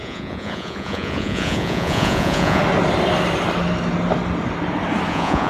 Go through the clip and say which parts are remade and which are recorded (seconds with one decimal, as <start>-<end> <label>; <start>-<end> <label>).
0.0-2.6 remade; 2.6-5.1 recorded; 5.1-5.5 remade